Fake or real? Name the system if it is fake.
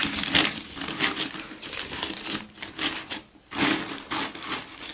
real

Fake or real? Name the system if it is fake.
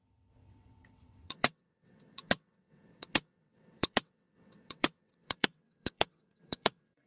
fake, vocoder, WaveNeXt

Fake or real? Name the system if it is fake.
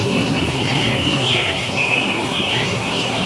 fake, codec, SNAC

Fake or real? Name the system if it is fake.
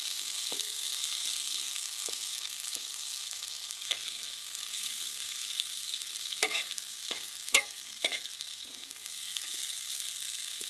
fake, codec, SNAC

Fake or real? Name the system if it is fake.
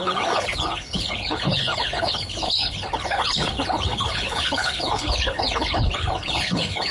fake, codec, HILCodec